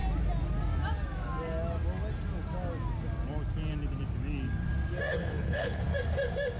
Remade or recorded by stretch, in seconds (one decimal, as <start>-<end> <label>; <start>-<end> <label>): 0.0-5.1 recorded; 5.1-5.8 remade; 5.8-6.6 recorded